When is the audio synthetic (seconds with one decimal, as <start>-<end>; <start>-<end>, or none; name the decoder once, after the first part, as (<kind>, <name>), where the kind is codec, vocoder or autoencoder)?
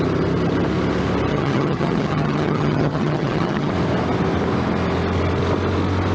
1.3-3.7 (vocoder, HiFi-GAN)